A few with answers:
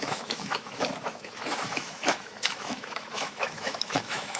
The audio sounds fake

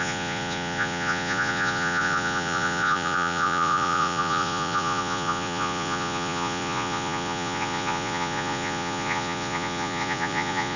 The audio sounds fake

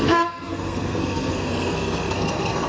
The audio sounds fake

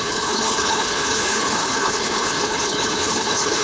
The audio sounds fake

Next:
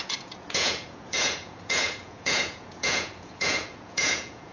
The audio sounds fake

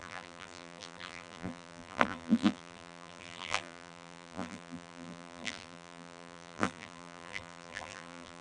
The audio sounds fake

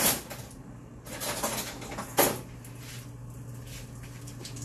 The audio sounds real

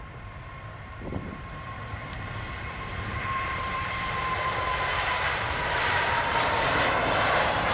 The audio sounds fake